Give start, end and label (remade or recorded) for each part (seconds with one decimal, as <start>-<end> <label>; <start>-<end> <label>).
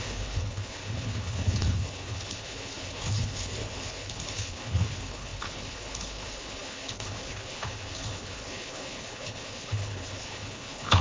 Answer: 0.0-11.0 remade